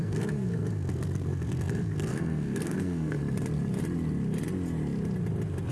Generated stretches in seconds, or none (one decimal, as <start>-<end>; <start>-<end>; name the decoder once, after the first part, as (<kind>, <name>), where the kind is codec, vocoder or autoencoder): 0.0-3.2 (codec, SNAC)